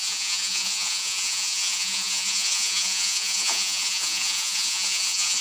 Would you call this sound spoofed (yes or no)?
yes